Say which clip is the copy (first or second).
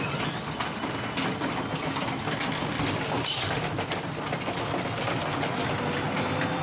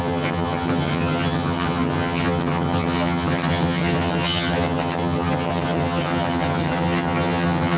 second